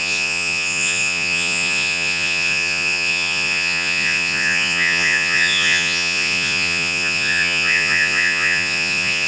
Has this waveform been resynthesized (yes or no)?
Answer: yes